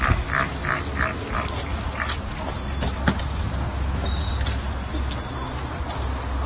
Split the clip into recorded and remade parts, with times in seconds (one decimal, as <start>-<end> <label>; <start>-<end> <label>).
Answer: 0.0-6.5 recorded